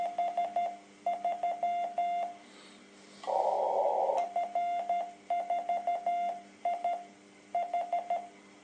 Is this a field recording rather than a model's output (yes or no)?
yes